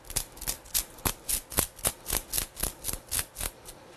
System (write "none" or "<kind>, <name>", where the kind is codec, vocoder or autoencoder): none